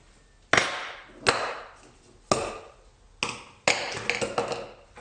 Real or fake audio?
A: real